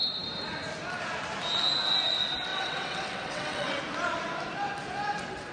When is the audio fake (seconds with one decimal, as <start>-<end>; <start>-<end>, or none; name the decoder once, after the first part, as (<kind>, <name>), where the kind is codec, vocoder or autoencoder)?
2.5-3.8 (vocoder, WaveNeXt)